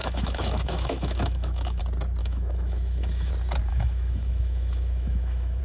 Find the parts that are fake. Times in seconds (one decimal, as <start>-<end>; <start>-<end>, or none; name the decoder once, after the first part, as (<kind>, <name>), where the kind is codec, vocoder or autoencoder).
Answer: 0.0-1.8 (autoencoder, DAC-VAE); 2.2-3.3; 3.7-5.6